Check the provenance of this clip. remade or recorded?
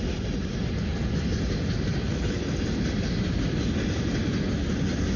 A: recorded